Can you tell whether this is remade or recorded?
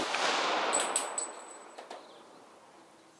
recorded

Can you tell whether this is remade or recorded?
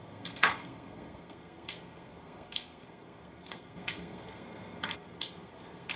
remade